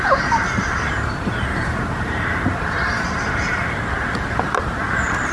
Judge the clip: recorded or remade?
remade